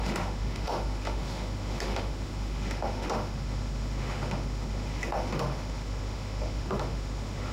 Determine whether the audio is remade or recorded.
remade